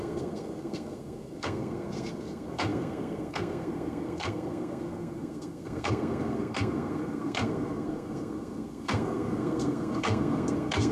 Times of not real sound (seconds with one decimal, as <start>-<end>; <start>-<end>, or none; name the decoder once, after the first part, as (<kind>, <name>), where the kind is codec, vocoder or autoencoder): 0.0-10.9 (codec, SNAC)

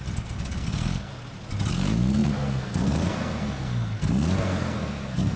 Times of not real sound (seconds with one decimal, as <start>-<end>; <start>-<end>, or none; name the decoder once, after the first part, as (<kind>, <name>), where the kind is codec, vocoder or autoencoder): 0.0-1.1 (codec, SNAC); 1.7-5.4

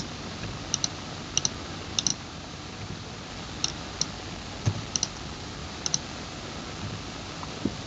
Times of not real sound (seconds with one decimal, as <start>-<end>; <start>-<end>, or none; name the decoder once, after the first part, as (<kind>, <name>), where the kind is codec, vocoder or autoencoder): 2.1-3.3 (vocoder, BigVGAN v2); 5.6-6.4

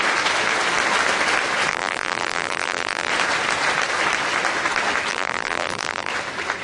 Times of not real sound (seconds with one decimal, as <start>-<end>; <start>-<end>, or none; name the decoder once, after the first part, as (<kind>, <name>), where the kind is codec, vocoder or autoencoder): 1.7-3.1 (vocoder, BigVGAN v2); 5.1-6.1